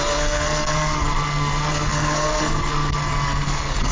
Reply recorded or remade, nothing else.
remade